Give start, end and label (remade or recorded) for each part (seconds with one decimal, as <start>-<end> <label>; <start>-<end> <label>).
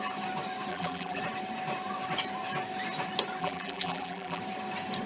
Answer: 0.0-0.7 recorded; 0.7-1.2 remade; 1.2-3.4 recorded; 3.4-4.4 remade; 4.4-5.1 recorded